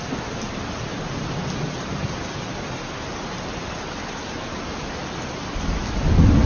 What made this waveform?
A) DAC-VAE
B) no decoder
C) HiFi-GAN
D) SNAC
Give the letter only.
B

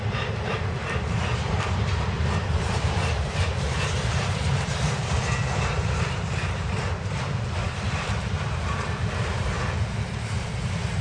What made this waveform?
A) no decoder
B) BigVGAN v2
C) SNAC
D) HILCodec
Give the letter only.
B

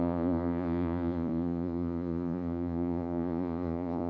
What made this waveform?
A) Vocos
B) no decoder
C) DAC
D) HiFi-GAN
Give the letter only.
A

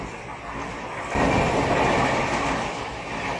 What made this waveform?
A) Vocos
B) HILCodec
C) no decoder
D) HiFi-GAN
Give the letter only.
C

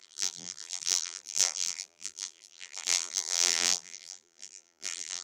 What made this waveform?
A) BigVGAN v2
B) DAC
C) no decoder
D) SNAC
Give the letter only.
A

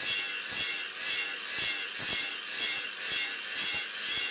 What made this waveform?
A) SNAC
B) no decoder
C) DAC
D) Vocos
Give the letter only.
B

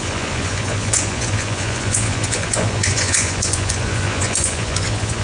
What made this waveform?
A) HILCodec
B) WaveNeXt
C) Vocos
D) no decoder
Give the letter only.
C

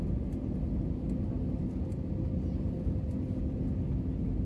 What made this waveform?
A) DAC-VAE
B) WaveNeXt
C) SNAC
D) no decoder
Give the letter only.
D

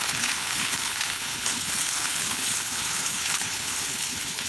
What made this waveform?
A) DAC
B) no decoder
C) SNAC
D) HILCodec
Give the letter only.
D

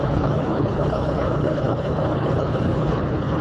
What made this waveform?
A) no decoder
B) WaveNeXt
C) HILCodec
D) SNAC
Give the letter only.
C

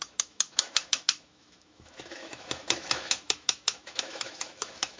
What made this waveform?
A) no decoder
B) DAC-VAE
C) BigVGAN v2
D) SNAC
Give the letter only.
B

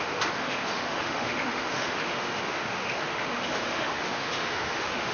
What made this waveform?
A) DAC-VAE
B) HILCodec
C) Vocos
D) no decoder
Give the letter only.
A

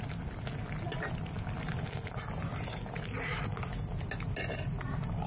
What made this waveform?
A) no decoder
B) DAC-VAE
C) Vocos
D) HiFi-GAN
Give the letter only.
A